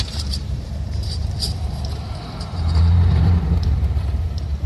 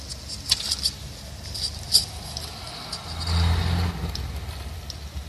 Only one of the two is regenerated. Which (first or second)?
first